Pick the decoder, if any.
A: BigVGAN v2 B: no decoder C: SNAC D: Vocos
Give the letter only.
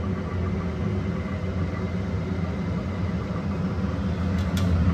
B